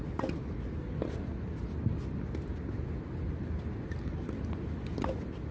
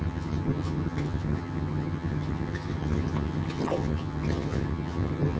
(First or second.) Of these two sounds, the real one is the first